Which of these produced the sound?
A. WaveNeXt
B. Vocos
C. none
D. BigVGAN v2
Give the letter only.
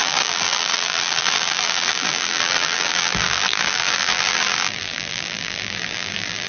D